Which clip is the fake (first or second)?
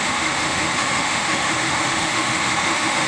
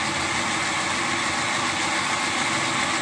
first